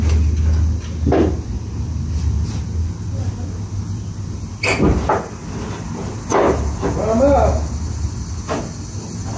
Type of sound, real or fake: real